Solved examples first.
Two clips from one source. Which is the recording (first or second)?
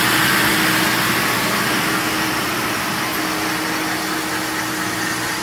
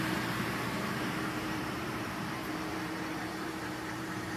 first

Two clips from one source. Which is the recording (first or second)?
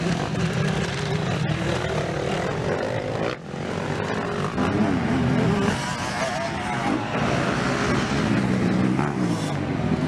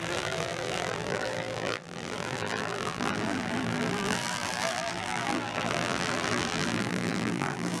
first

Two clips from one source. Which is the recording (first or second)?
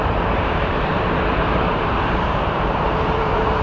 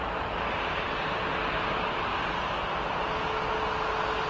second